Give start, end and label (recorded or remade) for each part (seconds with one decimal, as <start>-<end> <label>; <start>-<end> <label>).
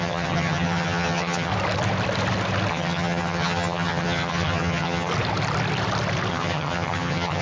0.0-1.5 remade; 1.5-2.7 recorded; 2.7-5.1 remade; 5.1-6.3 recorded; 6.3-7.4 remade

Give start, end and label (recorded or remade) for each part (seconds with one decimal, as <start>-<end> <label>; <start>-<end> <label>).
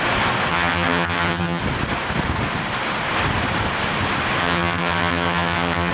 0.0-0.5 recorded; 0.5-1.6 remade; 1.6-4.4 recorded; 4.4-5.9 remade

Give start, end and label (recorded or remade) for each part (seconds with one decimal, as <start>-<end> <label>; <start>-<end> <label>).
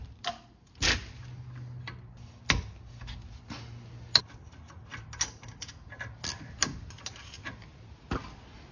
0.0-8.7 recorded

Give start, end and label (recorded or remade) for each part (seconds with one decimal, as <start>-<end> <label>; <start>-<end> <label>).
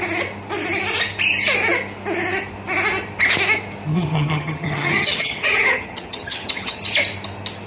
0.0-3.9 recorded; 3.9-6.8 remade; 6.8-7.7 recorded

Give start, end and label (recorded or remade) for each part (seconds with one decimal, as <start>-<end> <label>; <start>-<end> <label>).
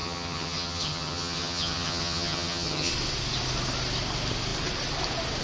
0.0-2.9 remade; 2.9-5.4 recorded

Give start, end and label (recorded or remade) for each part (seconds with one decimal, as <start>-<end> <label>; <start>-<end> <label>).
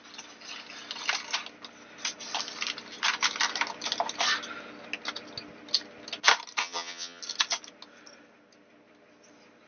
0.0-6.6 recorded; 6.6-7.2 remade; 7.2-9.7 recorded